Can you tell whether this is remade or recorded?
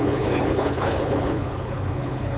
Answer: remade